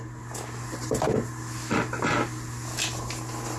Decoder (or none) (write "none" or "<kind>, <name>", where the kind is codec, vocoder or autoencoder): none